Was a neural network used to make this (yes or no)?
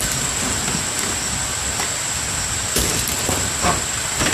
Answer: no